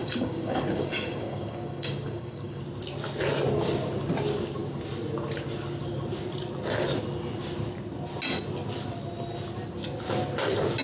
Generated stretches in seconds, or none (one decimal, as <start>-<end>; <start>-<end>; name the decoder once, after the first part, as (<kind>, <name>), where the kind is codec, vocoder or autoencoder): 0.0-2.6 (codec, DAC)